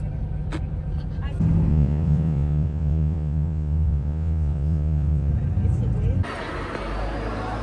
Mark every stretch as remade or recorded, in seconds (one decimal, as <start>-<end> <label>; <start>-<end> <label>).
0.0-1.7 recorded; 1.7-5.3 remade; 5.3-7.6 recorded